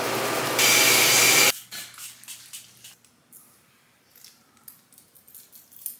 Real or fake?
real